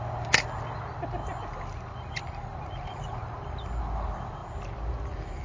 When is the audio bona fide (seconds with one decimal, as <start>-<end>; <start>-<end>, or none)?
0.0-5.4